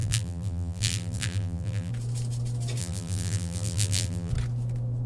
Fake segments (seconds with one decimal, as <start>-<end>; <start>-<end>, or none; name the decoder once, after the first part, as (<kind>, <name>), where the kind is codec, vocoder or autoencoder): 0.0-1.9 (vocoder, BigVGAN v2); 2.8-4.3